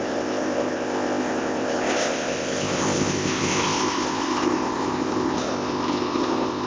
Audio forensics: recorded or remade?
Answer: remade